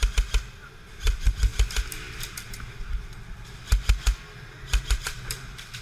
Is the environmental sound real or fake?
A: real